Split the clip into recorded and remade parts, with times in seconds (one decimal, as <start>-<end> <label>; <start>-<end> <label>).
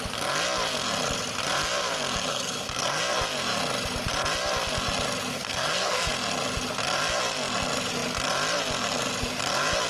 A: 0.0-2.3 recorded; 2.3-3.0 remade; 3.0-5.3 recorded; 5.3-6.1 remade; 6.1-9.9 recorded